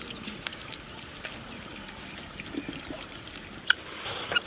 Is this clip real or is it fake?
fake